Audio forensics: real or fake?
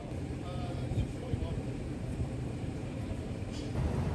fake